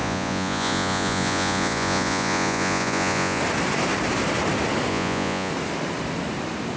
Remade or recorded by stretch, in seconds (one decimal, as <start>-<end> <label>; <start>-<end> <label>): 0.0-3.4 remade; 3.4-4.9 recorded; 4.9-5.5 remade; 5.5-6.8 recorded